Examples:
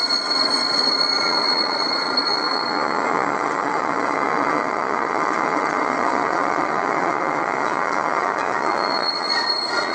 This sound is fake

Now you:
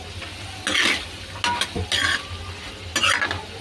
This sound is real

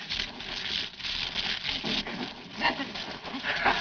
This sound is real